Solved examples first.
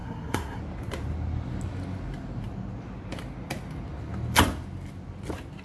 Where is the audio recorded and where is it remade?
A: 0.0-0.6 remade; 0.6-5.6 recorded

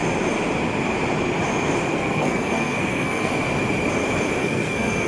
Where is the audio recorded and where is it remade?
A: 0.0-1.9 recorded; 1.9-3.3 remade; 3.3-4.4 recorded; 4.4-5.1 remade

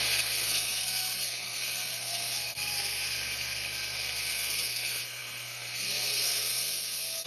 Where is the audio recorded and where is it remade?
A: 0.0-7.3 remade

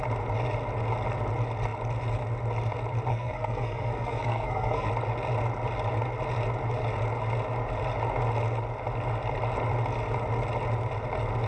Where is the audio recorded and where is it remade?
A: 0.0-3.1 recorded; 3.1-4.9 remade; 4.9-11.5 recorded

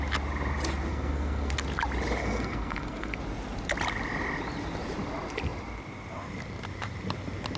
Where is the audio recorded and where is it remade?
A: 0.0-0.9 recorded; 0.9-1.5 remade; 1.5-2.2 recorded; 2.2-3.2 remade; 3.2-7.6 recorded

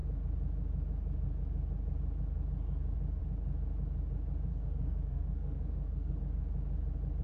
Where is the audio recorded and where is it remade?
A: 0.0-4.5 recorded; 4.5-6.2 remade; 6.2-7.2 recorded